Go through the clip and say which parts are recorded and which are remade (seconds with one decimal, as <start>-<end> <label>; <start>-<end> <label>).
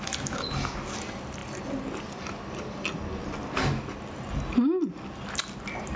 0.0-6.0 recorded